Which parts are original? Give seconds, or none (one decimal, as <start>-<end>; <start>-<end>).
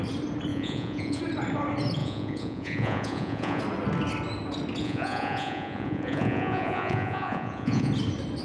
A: 0.0-0.5; 1.2-2.0; 3.6-4.8; 7.9-8.4